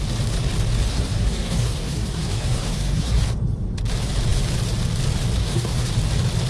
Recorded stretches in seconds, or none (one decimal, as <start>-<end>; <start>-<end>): 0.0-0.9; 3.2-5.4; 5.9-6.5